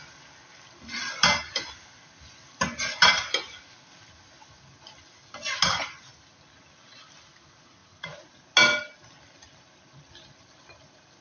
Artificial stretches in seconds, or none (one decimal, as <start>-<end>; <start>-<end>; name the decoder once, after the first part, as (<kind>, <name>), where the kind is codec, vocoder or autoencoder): 7.8-8.4 (vocoder, Vocos)

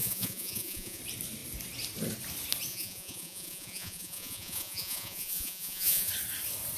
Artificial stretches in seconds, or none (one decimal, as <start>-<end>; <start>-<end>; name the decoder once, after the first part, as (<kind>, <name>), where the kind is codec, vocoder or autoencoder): 0.0-1.0 (vocoder, Vocos); 2.7-6.1

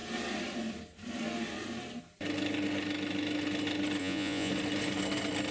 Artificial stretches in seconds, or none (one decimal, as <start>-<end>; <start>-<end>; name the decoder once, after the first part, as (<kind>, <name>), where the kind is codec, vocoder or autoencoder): 4.0-4.5 (vocoder, Vocos)

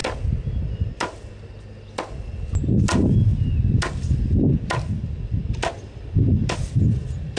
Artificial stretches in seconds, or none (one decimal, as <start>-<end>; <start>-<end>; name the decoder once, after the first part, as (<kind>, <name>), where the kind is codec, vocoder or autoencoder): none

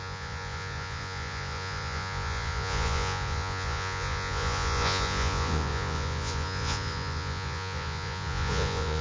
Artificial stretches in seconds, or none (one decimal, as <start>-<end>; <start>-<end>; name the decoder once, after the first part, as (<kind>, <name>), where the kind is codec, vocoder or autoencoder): 0.0-9.0 (vocoder, Vocos)

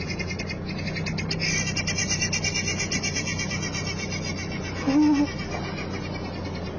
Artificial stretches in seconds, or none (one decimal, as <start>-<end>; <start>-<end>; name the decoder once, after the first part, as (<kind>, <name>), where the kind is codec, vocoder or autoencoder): none

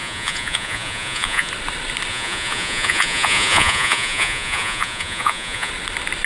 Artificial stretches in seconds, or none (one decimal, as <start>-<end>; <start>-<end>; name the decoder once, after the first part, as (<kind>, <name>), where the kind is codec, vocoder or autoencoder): 0.0-1.5 (vocoder, Vocos); 2.1-5.7